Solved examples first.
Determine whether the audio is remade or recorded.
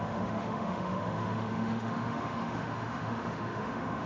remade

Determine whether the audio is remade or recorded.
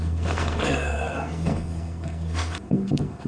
remade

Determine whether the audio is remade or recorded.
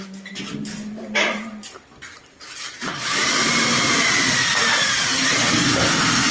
recorded